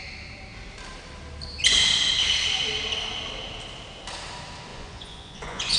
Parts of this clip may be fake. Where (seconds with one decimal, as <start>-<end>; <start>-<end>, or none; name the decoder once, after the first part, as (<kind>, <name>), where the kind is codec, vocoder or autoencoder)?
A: 4.7-5.8 (vocoder, Vocos)

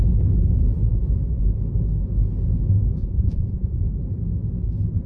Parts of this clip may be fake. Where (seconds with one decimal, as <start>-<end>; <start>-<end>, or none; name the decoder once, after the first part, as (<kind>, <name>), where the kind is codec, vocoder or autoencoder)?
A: 3.0-3.8 (vocoder, Vocos)

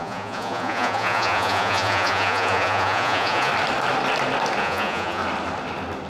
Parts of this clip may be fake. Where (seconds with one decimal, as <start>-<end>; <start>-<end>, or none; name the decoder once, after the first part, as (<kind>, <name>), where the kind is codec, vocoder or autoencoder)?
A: 0.0-3.5 (vocoder, Vocos); 4.6-5.2

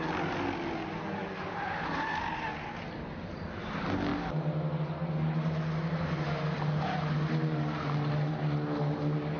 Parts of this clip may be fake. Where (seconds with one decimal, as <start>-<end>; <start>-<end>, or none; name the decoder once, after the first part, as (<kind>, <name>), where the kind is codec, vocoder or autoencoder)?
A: none

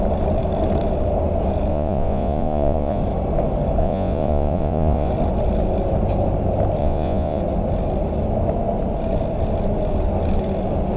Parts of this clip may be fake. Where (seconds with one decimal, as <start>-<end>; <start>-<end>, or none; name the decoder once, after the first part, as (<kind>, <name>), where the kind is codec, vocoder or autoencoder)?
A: 1.7-3.0 (vocoder, Vocos); 3.8-5.1; 6.8-7.4

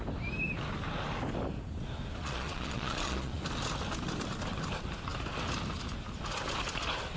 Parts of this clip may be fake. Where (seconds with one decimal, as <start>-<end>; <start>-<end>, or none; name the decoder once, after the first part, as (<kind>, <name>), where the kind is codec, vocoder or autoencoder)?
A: 2.2-3.4 (vocoder, Vocos)